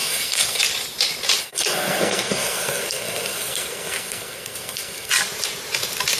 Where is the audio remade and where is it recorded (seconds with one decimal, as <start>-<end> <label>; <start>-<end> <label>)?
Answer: 0.0-0.6 remade; 0.6-1.4 recorded; 1.4-5.1 remade; 5.1-6.2 recorded